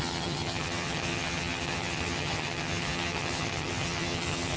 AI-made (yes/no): yes